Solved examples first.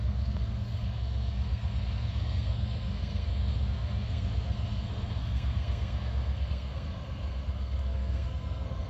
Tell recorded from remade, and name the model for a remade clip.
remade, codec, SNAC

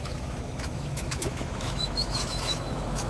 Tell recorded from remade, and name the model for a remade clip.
remade, autoencoder, DAC-VAE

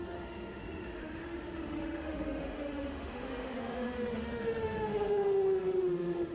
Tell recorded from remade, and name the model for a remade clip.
remade, autoencoder, DAC-VAE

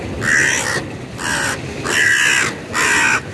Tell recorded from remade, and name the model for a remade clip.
recorded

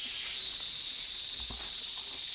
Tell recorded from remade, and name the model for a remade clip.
recorded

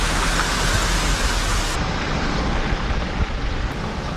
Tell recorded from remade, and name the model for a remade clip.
recorded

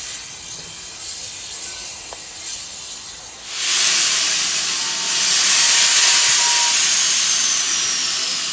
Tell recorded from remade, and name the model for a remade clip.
recorded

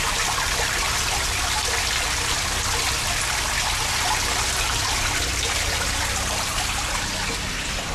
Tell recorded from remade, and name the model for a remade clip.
recorded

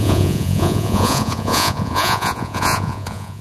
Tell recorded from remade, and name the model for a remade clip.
remade, vocoder, Vocos